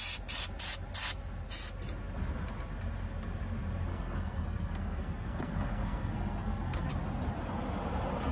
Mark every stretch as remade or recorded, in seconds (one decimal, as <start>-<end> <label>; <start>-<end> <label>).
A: 0.0-3.9 recorded; 3.9-6.9 remade; 6.9-8.3 recorded

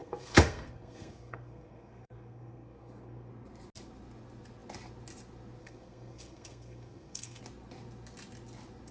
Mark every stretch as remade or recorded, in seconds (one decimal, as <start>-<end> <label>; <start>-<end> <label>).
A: 0.0-3.3 remade; 3.3-5.6 recorded; 5.6-7.4 remade; 7.4-8.9 recorded

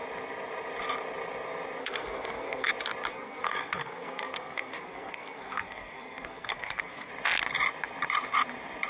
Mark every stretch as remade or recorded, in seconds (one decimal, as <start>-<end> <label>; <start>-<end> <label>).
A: 0.0-1.8 recorded; 1.8-2.7 remade; 2.7-3.1 recorded; 3.1-7.1 remade; 7.1-8.9 recorded

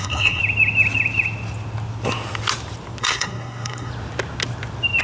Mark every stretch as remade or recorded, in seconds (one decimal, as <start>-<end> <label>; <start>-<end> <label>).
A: 0.0-0.4 remade; 0.4-3.0 recorded; 3.0-3.9 remade; 3.9-5.0 recorded